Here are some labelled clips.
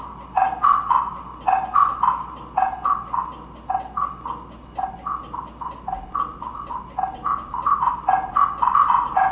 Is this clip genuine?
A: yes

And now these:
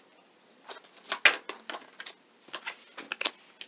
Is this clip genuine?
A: yes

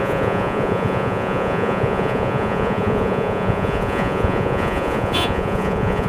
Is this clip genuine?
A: no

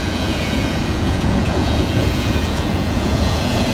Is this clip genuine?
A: no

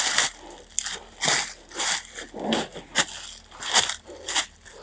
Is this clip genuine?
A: yes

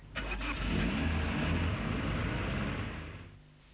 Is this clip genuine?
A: yes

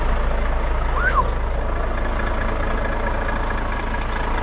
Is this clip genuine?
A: yes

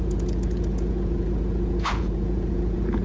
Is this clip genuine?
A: no